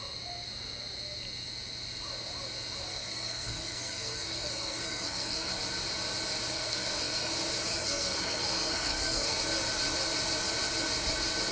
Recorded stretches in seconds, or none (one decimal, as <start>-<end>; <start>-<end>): 0.0-2.9; 5.5-6.5; 7.3-7.7; 9.4-11.5